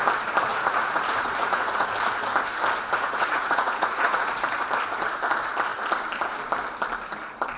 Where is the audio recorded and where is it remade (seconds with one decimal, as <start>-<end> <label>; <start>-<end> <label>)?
0.0-0.5 recorded; 0.5-1.9 remade; 1.9-2.9 recorded; 2.9-4.4 remade; 4.4-7.6 recorded

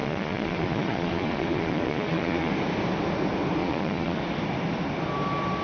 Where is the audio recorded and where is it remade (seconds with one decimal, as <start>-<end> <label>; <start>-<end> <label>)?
0.0-2.5 remade; 2.5-3.6 recorded; 3.6-4.2 remade; 4.2-5.6 recorded